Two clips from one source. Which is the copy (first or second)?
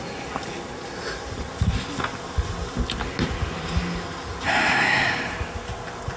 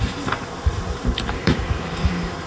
second